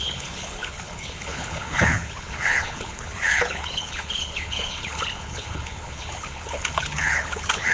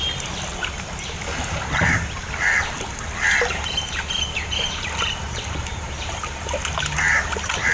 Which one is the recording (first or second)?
second